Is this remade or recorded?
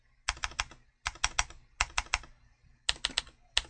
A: recorded